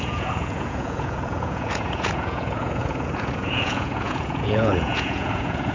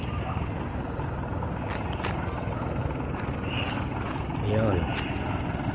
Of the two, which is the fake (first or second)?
first